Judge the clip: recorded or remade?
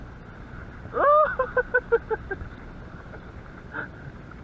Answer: recorded